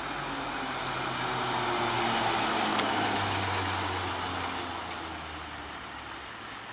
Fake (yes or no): no